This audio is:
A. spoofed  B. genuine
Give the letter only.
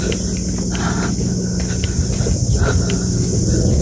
B